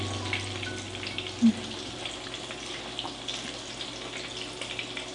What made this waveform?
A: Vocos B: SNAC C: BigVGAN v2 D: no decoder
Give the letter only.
D